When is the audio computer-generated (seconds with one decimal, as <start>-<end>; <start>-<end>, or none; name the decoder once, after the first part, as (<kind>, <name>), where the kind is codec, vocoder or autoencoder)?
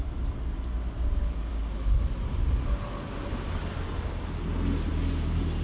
none